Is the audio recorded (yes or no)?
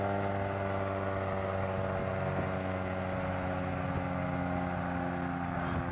yes